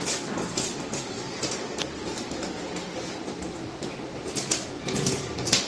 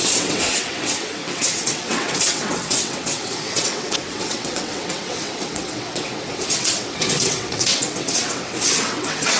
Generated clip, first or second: second